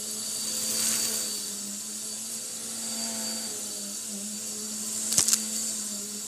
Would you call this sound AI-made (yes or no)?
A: no